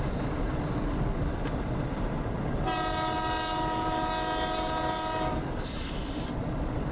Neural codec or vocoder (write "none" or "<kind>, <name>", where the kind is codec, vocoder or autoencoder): none